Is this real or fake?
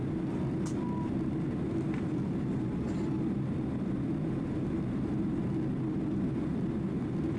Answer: real